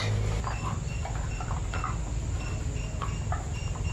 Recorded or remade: recorded